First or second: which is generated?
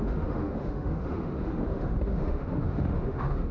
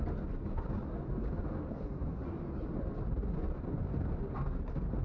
first